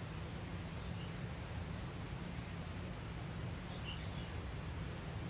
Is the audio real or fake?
real